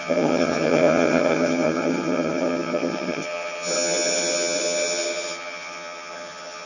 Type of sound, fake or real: fake